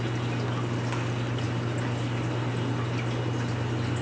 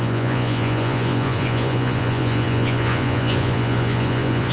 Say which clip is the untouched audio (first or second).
first